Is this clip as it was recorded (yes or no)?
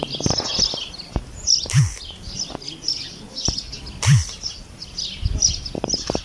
yes